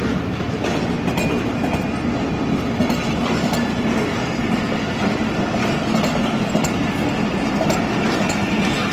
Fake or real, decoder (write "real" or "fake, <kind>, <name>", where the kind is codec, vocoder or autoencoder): real